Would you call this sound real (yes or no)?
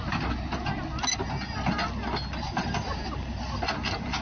yes